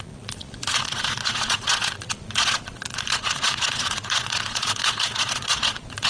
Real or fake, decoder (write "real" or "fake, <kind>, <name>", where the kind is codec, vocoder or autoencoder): fake, vocoder, Vocos